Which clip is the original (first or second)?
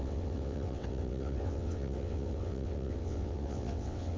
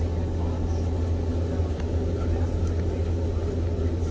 second